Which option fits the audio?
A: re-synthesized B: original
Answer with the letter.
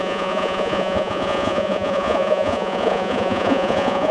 A